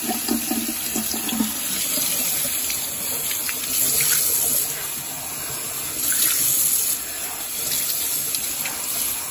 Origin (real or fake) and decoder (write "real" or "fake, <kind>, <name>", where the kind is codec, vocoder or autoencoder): real